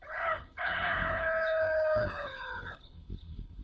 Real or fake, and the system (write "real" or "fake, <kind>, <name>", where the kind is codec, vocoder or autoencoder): fake, codec, HILCodec